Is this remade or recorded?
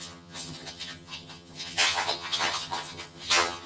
remade